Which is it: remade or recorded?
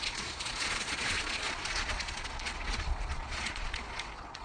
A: remade